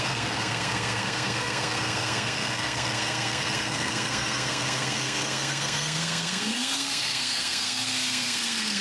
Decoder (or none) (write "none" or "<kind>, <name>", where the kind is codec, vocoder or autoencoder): codec, SNAC